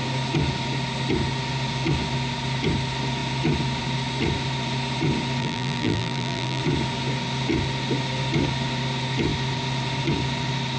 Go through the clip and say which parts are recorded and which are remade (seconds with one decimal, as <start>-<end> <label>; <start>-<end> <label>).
0.0-5.4 recorded; 5.4-6.6 remade; 6.6-10.8 recorded